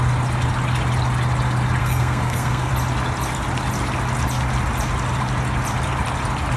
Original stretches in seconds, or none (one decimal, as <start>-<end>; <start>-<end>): 0.0-1.8; 2.7-6.6